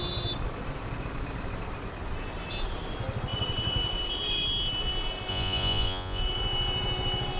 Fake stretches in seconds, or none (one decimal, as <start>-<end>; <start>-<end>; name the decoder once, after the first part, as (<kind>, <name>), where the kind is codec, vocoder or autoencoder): 5.3-6.2 (vocoder, Vocos)